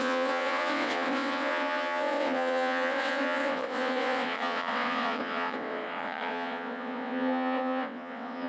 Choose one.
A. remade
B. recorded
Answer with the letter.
A